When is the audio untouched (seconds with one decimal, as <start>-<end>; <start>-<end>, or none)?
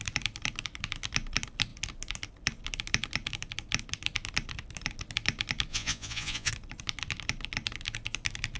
0.0-5.7; 6.5-8.6